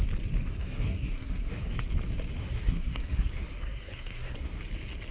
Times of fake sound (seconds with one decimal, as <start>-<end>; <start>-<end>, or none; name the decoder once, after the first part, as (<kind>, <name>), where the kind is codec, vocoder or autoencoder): 0.4-1.7 (codec, SNAC); 2.4-4.6